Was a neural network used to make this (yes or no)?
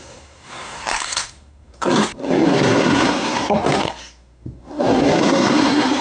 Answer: yes